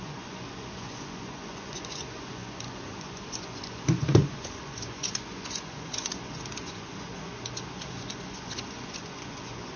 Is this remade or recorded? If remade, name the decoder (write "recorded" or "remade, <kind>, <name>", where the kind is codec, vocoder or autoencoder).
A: remade, vocoder, Vocos